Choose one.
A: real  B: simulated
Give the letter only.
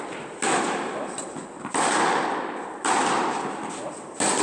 B